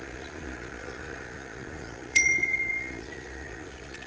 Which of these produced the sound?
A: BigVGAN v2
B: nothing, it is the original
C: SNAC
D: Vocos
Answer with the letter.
D